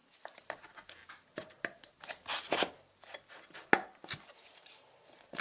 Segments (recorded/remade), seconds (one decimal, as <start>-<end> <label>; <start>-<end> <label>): 0.0-5.4 recorded